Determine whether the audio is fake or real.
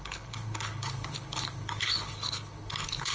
fake